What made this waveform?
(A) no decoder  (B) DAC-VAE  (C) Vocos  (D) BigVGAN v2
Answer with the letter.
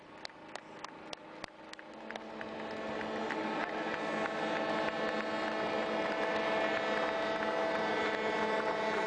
A